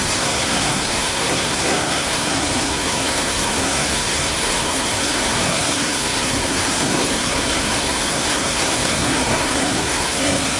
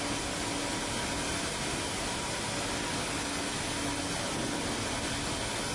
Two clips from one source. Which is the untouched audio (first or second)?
second